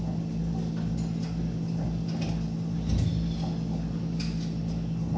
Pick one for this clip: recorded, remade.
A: recorded